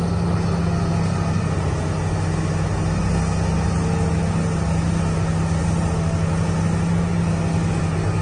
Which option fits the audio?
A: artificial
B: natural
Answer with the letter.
B